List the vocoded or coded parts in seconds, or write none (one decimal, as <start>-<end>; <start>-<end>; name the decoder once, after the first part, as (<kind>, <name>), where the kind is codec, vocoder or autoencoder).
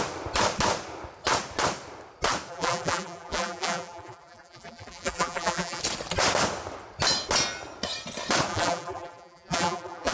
2.5-5.8 (vocoder, BigVGAN v2); 8.5-10.1